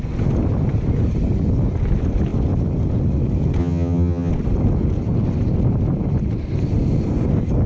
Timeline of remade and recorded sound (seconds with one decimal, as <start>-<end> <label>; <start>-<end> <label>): 0.0-3.6 recorded; 3.6-4.3 remade; 4.3-7.7 recorded